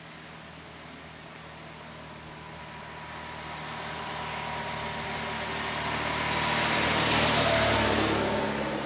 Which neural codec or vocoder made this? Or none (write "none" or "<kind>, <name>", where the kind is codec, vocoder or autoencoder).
none